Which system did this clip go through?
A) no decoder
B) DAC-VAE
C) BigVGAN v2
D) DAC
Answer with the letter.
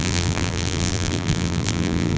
C